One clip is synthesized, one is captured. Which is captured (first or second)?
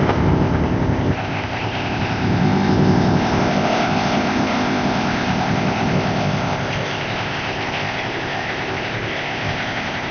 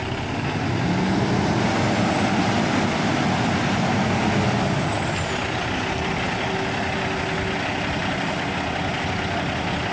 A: second